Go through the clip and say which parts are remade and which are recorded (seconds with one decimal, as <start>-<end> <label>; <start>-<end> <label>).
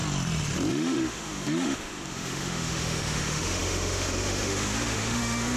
0.0-0.7 recorded; 0.7-5.6 remade